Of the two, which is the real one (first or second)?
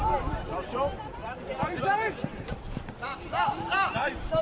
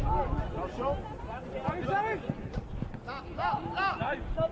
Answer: second